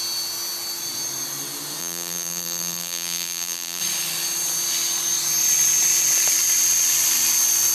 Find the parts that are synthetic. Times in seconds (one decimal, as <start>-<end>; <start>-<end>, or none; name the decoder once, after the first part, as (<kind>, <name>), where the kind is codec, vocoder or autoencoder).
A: 1.8-3.8 (vocoder, BigVGAN v2)